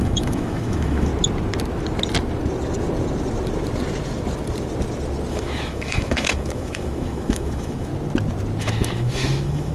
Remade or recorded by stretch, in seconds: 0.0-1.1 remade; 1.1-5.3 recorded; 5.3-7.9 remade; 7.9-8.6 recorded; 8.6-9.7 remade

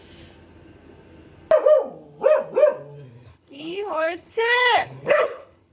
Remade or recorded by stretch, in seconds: 0.0-3.3 recorded; 3.3-5.7 remade

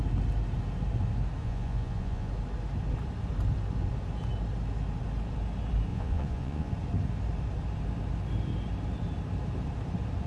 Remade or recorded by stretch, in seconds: 0.0-1.4 recorded; 1.4-2.3 remade; 2.3-5.9 recorded; 5.9-6.7 remade; 6.7-10.3 recorded

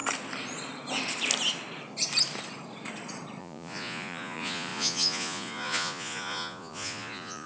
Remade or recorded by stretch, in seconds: 0.0-3.4 recorded; 3.4-7.5 remade

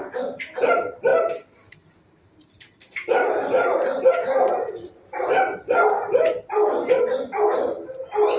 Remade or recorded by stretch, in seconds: 0.0-1.1 recorded; 1.1-4.0 remade; 4.0-4.5 recorded; 4.5-6.3 remade; 6.3-8.4 recorded